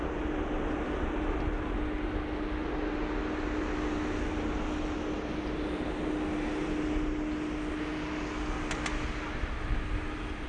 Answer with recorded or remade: recorded